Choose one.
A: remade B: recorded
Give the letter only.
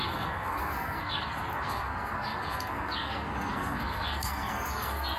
A